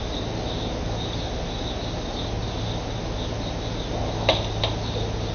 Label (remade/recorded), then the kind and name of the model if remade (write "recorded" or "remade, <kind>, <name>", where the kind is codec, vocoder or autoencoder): recorded